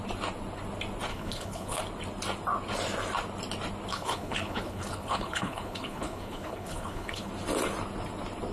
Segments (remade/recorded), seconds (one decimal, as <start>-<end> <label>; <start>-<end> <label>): 0.0-1.1 recorded; 1.1-1.8 remade; 1.8-3.9 recorded; 3.9-7.3 remade; 7.3-8.5 recorded